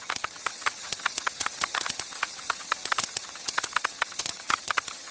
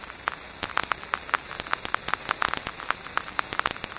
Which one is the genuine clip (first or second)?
second